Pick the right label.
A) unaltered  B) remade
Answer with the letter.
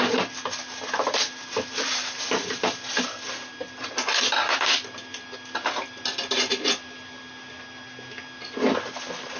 A